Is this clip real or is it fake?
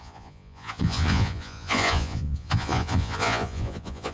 fake